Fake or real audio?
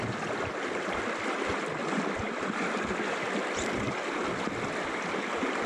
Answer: real